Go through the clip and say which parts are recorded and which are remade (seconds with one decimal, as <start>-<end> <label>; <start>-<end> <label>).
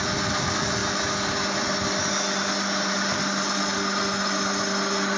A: 0.0-5.2 recorded